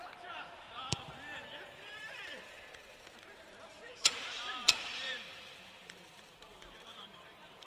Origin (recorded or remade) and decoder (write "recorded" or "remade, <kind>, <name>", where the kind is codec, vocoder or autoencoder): remade, vocoder, BigVGAN v2